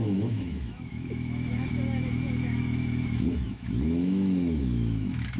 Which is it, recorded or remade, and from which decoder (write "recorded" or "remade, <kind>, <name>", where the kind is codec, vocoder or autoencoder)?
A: remade, autoencoder, DAC-VAE